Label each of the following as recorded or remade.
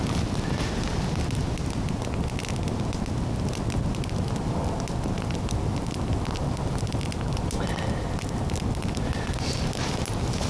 recorded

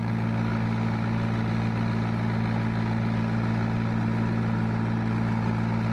recorded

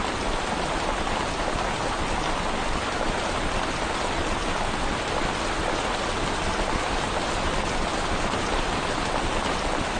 recorded